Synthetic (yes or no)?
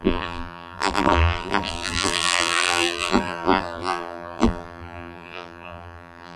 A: yes